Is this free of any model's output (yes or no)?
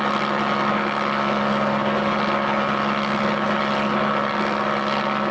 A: yes